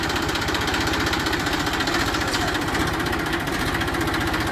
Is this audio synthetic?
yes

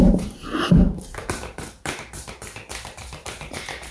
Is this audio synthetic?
yes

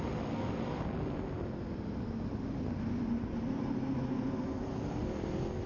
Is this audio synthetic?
no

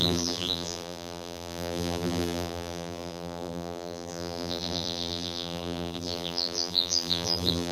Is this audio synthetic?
yes